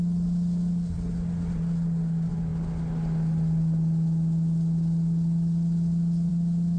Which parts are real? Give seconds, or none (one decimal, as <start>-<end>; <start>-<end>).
0.0-6.8